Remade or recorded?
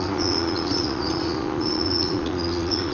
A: remade